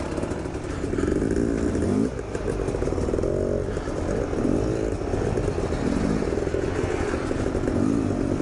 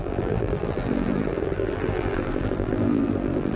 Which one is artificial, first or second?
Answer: second